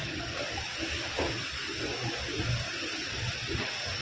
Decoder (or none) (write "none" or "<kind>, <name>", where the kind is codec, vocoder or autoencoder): none